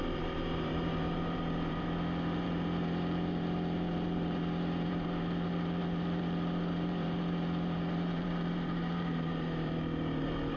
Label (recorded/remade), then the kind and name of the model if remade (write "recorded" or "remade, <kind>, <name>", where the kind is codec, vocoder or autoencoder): remade, vocoder, BigVGAN v2